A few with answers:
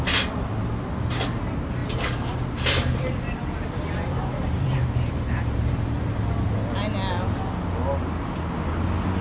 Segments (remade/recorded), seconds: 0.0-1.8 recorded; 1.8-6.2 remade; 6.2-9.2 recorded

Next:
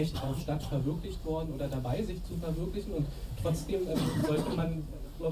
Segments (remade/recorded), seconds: 0.0-0.7 remade; 0.7-3.1 recorded; 3.1-5.3 remade